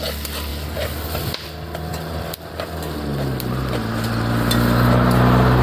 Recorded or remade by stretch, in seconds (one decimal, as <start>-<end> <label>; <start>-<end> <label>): 0.0-1.9 recorded; 1.9-2.5 remade; 2.5-5.6 recorded